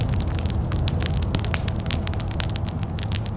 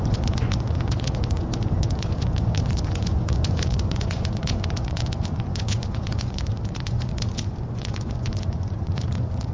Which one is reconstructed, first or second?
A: second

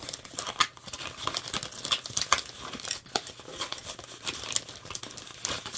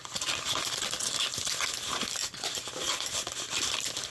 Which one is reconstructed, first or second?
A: second